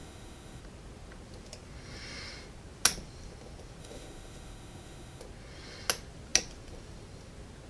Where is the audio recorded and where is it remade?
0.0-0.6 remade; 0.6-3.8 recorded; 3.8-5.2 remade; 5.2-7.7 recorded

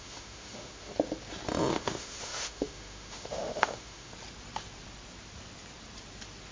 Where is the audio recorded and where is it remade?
0.0-0.9 remade; 0.9-1.7 recorded; 1.7-4.1 remade; 4.1-6.5 recorded

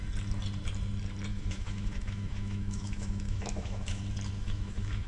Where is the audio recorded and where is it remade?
0.0-1.3 recorded; 1.3-4.0 remade; 4.0-4.4 recorded; 4.4-5.1 remade

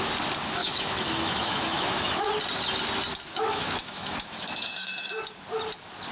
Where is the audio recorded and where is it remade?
0.0-0.6 recorded; 0.6-2.3 remade; 2.3-3.1 recorded; 3.1-5.2 remade; 5.2-6.1 recorded

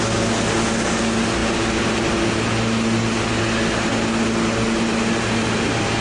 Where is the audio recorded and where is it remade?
0.0-6.0 recorded

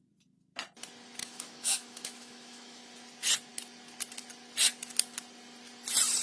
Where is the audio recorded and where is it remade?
0.0-1.2 recorded; 1.2-2.8 remade; 2.8-6.2 recorded